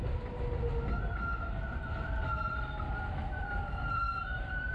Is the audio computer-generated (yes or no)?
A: no